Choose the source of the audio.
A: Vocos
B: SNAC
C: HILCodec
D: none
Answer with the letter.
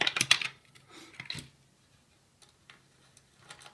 D